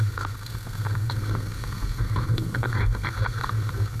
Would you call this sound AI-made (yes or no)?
yes